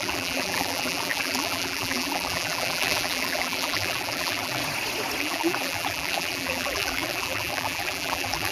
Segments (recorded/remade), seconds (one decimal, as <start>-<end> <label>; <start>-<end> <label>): 0.0-4.6 remade; 4.6-5.2 recorded; 5.2-8.5 remade